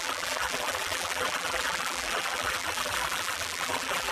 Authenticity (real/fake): fake